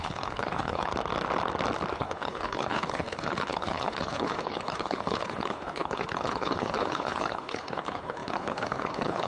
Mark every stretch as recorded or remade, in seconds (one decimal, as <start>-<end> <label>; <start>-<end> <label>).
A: 0.0-0.9 remade; 0.9-1.9 recorded; 1.9-9.3 remade